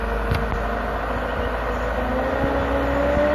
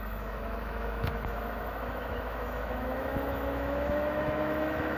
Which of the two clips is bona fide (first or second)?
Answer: first